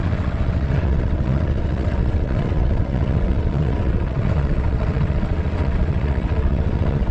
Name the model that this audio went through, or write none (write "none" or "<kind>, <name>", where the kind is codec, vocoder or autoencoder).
vocoder, WaveNeXt